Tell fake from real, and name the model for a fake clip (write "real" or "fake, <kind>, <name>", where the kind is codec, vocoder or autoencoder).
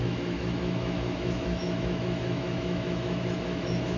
fake, autoencoder, DAC-VAE